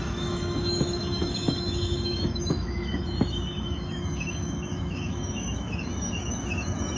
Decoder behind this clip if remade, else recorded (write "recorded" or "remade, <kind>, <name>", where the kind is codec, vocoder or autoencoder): remade, autoencoder, DAC-VAE